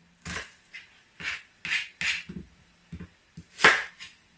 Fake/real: real